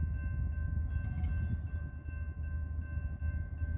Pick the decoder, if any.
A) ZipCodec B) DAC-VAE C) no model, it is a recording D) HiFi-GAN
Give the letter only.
C